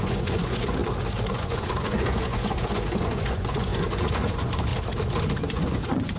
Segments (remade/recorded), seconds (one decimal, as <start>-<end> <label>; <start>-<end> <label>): 0.0-0.8 remade; 0.8-1.3 recorded; 1.3-4.7 remade; 4.7-5.3 recorded; 5.3-6.2 remade